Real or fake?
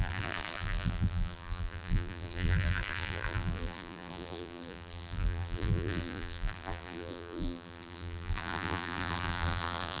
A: fake